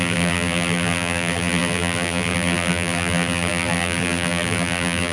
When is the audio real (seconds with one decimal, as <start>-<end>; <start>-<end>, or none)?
none